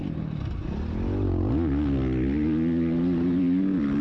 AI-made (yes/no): no